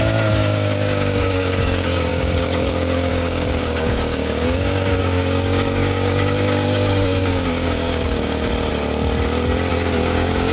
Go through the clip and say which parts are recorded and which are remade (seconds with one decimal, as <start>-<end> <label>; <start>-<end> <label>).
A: 0.0-8.5 remade; 8.5-9.7 recorded; 9.7-10.5 remade